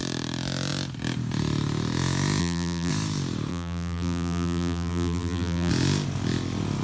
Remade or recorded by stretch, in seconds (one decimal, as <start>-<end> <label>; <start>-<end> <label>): 0.0-2.4 recorded; 2.4-2.9 remade; 2.9-3.5 recorded; 3.5-5.7 remade; 5.7-6.8 recorded

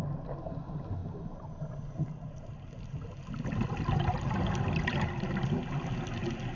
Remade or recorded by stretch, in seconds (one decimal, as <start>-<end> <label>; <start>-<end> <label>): 0.0-1.0 recorded; 1.0-2.5 remade; 2.5-6.5 recorded

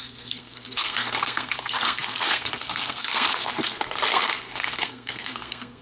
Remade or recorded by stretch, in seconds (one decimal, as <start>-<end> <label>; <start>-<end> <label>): 0.0-5.8 remade

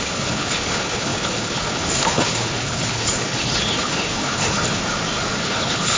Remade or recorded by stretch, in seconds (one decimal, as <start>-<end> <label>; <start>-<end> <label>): 0.0-4.8 remade; 4.8-5.4 recorded; 5.4-6.0 remade

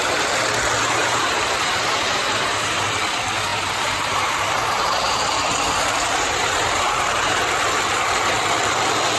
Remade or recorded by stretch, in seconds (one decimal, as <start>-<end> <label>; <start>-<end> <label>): 0.0-1.0 recorded; 1.0-2.8 remade; 2.8-3.5 recorded; 3.5-7.5 remade; 7.5-9.2 recorded

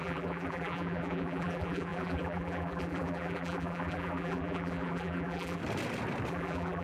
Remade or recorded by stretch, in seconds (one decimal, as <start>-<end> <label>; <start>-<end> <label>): 0.0-5.6 remade; 5.6-6.3 recorded; 6.3-6.8 remade